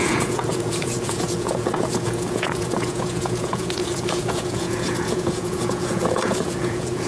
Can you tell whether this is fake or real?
fake